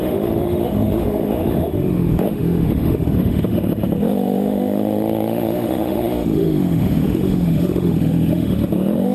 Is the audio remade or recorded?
remade